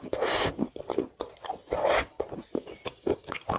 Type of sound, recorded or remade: recorded